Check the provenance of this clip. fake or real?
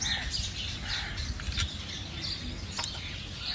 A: real